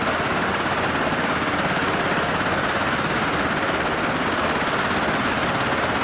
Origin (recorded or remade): recorded